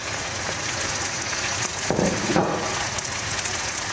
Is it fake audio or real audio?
fake